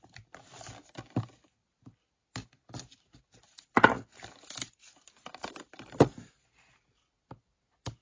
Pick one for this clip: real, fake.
real